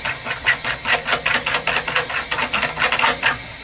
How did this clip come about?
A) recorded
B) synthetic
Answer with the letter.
A